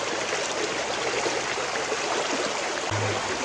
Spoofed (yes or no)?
no